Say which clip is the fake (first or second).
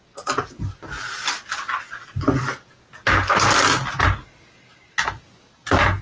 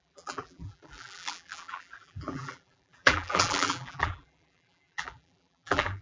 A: second